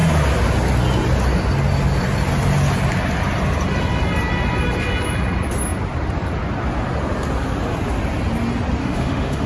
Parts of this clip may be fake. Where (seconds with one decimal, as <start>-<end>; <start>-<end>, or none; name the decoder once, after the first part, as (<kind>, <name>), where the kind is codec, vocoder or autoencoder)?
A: 8.8-9.5 (autoencoder, DAC-VAE)